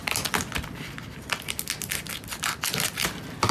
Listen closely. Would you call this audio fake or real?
real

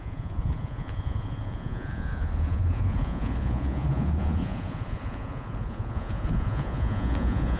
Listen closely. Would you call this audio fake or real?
fake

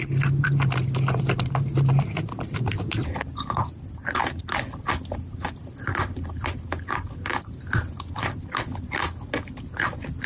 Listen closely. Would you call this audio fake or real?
real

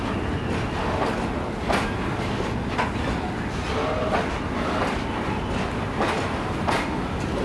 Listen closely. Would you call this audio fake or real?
real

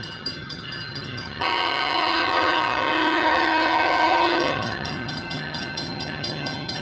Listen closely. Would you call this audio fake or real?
fake